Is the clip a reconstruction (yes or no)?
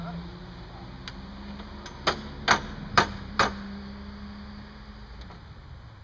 no